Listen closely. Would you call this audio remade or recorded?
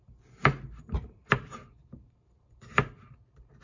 remade